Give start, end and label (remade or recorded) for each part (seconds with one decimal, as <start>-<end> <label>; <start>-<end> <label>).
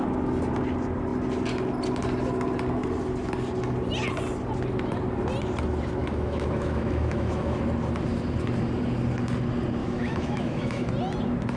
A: 0.0-6.0 recorded; 6.0-7.6 remade; 7.6-9.8 recorded; 9.8-10.9 remade; 10.9-11.6 recorded